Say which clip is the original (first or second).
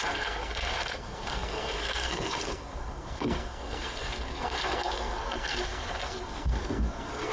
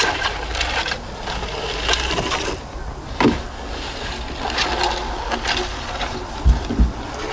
second